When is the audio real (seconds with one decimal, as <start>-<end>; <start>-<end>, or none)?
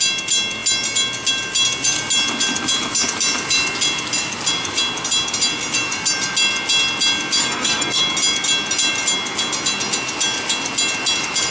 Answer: 0.0-7.4; 8.0-11.5